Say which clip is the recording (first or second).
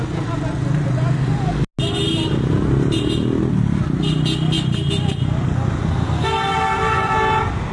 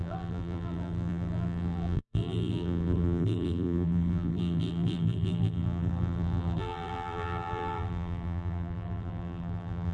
first